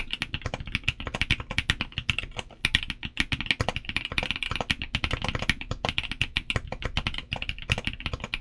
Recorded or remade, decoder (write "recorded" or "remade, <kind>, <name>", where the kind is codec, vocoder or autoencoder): recorded